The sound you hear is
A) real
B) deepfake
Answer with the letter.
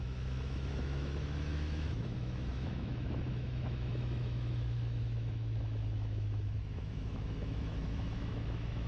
B